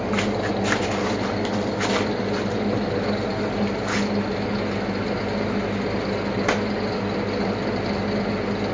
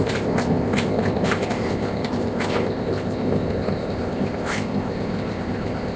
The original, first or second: first